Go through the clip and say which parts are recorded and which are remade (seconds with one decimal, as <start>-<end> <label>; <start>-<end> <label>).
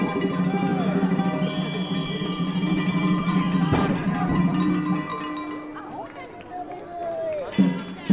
0.0-2.0 recorded; 2.0-4.5 remade; 4.5-8.1 recorded